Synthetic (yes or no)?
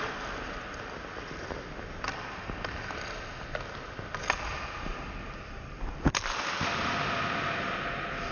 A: no